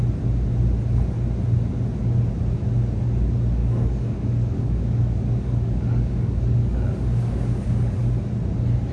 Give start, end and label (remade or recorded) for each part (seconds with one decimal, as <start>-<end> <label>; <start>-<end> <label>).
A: 0.0-3.6 recorded; 3.6-8.0 remade; 8.0-8.9 recorded